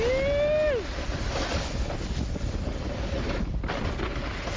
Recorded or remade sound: recorded